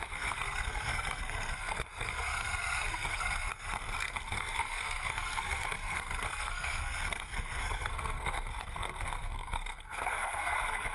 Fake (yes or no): yes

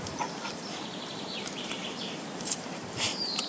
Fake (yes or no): yes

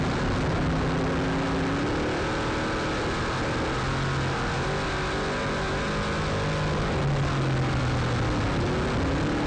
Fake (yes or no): no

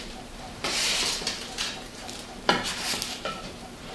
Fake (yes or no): yes